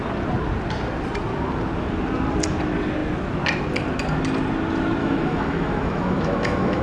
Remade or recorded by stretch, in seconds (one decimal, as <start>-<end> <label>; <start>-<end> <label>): 0.0-5.0 recorded; 5.0-6.8 remade